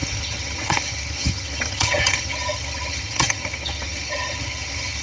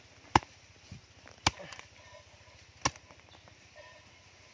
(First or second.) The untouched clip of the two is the second